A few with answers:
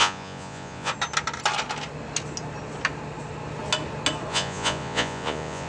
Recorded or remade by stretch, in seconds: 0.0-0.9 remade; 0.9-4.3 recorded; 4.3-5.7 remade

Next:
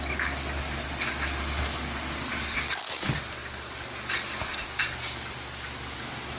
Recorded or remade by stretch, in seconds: 0.0-6.4 recorded

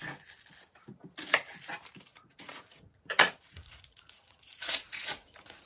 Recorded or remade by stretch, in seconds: 0.0-2.1 recorded; 2.1-5.7 remade

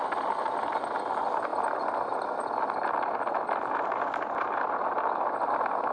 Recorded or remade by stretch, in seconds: 0.0-5.9 recorded